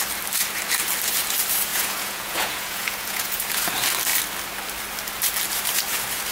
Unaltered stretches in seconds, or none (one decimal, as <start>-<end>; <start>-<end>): 0.0-1.7; 3.4-6.3